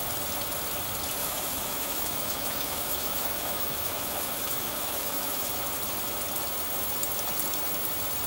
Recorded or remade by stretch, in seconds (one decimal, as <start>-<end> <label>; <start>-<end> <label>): 0.0-1.2 recorded; 1.2-5.5 remade; 5.5-8.3 recorded